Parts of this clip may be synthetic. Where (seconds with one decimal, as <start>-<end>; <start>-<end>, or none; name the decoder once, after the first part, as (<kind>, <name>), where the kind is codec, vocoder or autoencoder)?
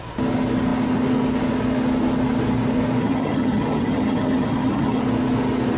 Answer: 3.0-5.0 (vocoder, HiFi-GAN)